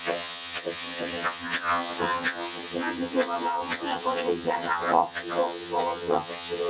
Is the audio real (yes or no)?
no